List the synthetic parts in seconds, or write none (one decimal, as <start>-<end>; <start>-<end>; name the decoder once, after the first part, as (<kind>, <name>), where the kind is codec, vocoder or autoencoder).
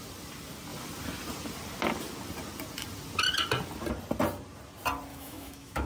5.1-5.9 (autoencoder, DAC-VAE)